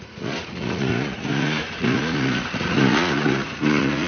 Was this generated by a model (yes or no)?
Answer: yes